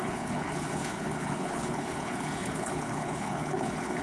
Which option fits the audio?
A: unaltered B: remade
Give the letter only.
B